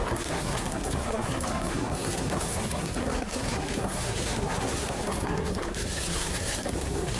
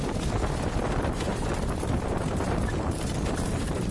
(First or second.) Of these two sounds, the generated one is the first